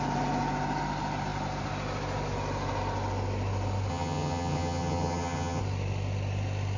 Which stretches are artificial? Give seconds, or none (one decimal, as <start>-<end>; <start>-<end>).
3.9-5.6